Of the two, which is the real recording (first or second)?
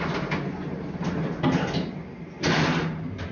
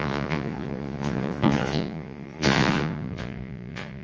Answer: first